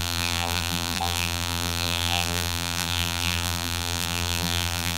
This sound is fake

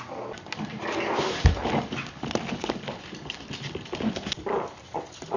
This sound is real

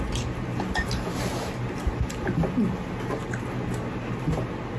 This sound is real